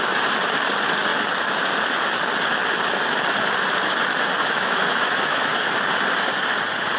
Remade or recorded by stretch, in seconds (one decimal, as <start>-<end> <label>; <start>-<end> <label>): 0.0-4.4 recorded; 4.4-5.6 remade; 5.6-7.0 recorded